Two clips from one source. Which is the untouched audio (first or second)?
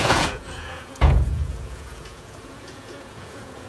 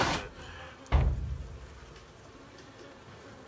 second